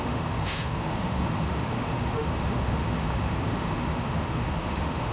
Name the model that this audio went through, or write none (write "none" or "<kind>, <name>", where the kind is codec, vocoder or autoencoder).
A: autoencoder, DAC-VAE